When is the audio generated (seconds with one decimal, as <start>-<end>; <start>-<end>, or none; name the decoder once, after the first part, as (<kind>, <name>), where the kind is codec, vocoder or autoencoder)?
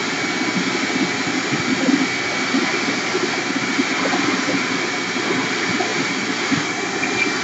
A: 5.9-6.7 (vocoder, BigVGAN v2)